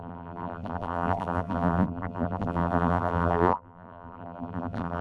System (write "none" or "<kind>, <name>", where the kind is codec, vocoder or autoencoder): vocoder, BigVGAN v2